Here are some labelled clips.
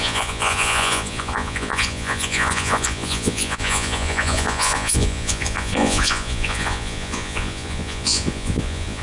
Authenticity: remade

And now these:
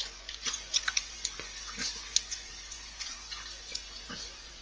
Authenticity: remade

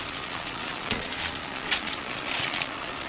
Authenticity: remade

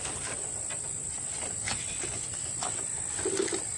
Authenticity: recorded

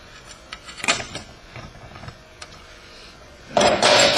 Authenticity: remade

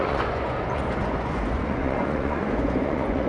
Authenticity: remade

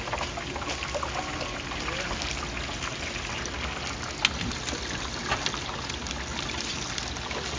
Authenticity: recorded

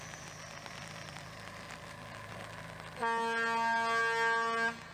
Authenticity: recorded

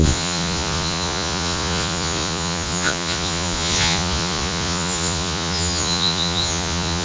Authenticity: remade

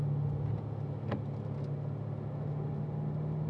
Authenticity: recorded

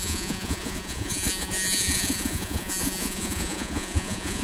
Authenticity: remade